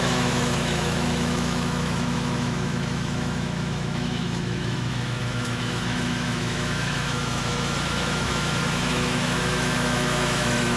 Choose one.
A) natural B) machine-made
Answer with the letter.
B